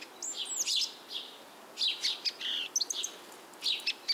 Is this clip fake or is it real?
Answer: real